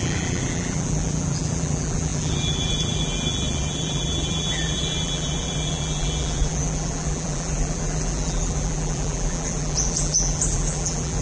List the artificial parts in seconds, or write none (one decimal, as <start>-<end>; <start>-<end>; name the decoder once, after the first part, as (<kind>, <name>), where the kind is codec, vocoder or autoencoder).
0.0-11.2 (vocoder, BigVGAN v2)